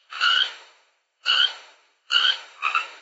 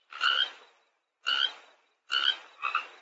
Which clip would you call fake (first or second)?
first